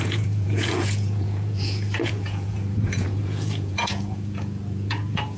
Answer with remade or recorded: remade